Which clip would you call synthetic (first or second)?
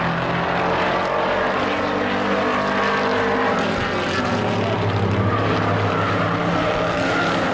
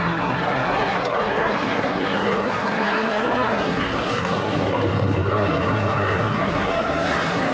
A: second